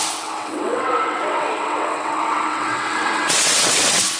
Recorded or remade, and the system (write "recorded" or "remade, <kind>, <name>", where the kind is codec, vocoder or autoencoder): remade, vocoder, WaveNeXt